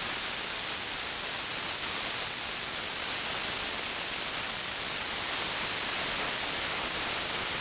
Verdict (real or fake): real